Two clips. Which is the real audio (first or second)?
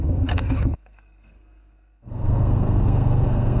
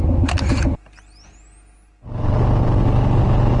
second